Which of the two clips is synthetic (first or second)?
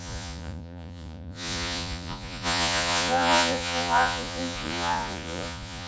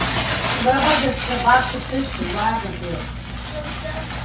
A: first